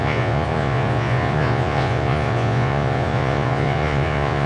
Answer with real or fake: fake